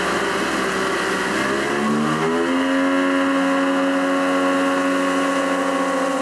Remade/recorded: recorded